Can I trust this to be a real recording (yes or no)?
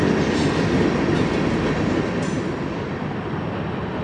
yes